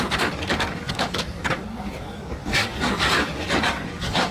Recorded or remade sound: remade